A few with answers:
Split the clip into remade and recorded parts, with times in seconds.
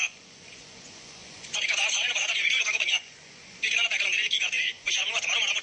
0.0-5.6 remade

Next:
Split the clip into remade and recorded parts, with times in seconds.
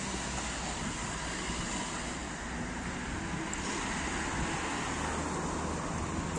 0.0-6.4 recorded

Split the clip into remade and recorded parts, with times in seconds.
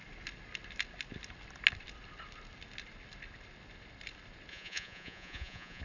0.0-4.5 recorded; 4.5-5.8 remade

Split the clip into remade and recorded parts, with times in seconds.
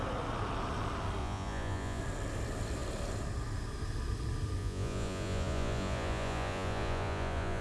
0.0-1.2 recorded; 1.2-2.0 remade; 2.0-4.6 recorded; 4.6-7.6 remade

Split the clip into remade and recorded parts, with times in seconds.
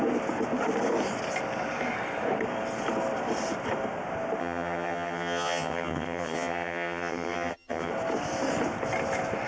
0.0-4.4 recorded; 4.4-7.9 remade; 7.9-9.5 recorded